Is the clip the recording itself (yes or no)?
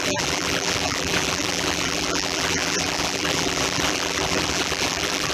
no